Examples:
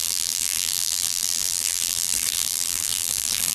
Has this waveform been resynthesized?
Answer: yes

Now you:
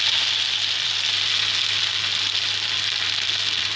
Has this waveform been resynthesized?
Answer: no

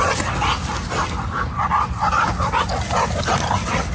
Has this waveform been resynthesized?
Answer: no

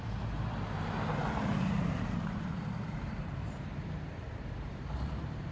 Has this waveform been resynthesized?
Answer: yes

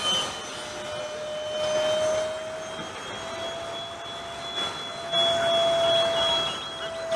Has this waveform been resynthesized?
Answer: no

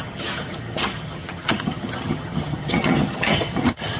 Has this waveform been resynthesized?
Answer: yes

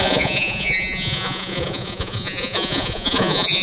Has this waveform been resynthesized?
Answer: yes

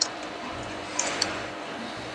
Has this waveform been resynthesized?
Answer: yes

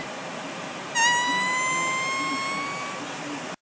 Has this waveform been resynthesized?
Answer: no